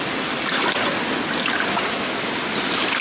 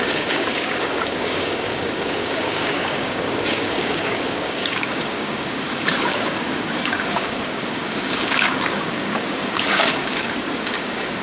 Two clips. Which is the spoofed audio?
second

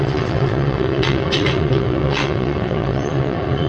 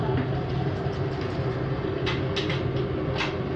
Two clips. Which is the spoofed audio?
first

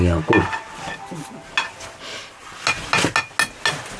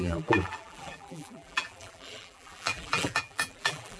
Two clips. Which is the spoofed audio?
second